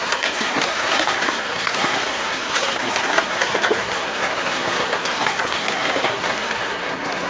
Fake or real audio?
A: fake